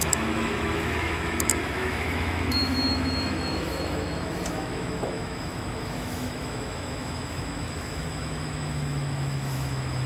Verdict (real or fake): fake